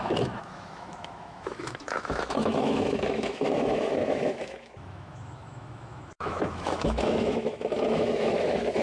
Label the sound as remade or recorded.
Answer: remade